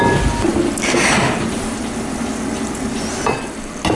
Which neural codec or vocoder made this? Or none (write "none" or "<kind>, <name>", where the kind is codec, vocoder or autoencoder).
none